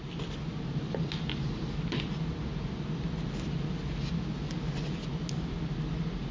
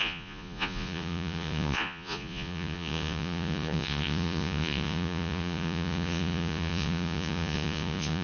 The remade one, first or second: second